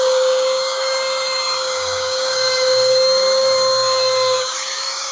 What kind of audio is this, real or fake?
fake